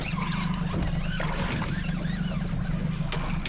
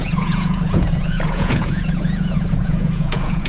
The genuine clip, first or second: first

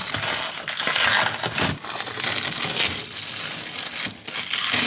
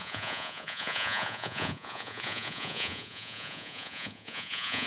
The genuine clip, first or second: first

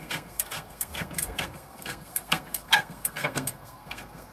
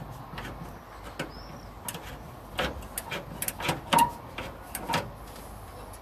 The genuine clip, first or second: second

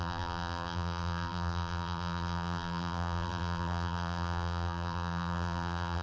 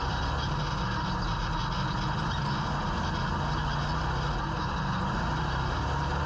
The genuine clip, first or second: second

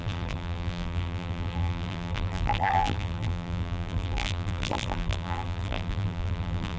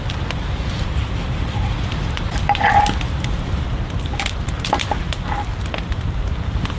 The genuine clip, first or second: second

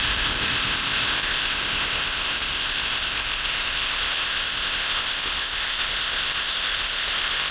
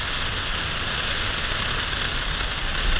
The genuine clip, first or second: second